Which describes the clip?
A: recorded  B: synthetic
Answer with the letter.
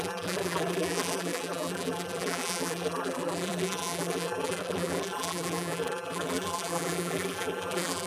B